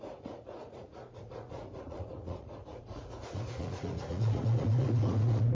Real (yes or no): no